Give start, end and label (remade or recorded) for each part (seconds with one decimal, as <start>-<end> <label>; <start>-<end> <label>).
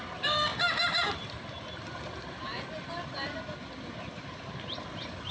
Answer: 0.0-5.3 recorded